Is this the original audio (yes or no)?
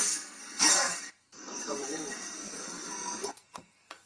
no